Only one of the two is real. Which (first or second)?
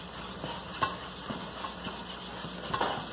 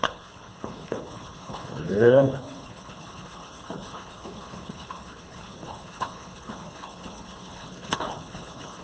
first